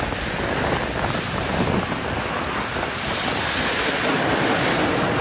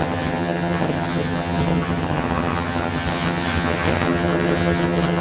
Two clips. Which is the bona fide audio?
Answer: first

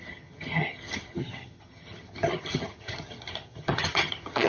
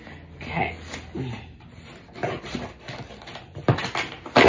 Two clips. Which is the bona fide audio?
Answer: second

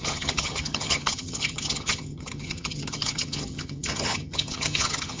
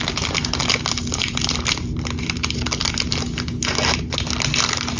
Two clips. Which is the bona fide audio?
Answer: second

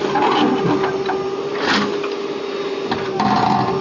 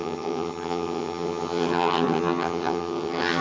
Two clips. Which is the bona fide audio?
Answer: first